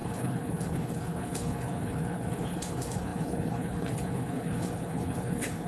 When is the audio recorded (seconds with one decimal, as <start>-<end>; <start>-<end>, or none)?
none